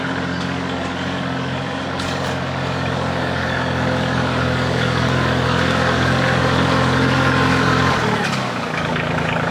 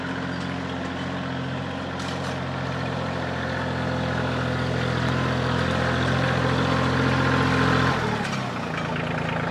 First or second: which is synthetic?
first